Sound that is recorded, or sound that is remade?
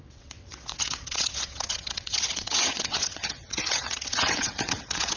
remade